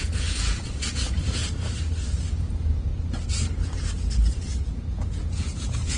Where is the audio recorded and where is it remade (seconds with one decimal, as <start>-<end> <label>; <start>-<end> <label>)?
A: 0.0-1.4 remade; 1.4-2.3 recorded; 2.3-2.9 remade; 2.9-4.9 recorded; 4.9-6.0 remade